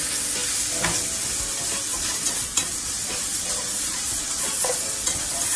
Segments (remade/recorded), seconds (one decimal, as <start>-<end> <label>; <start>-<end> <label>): 0.0-1.9 recorded; 1.9-5.6 remade